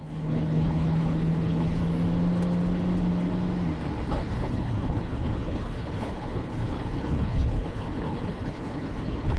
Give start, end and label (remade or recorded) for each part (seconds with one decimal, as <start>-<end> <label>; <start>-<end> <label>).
0.0-1.8 remade; 1.8-4.1 recorded; 4.1-9.4 remade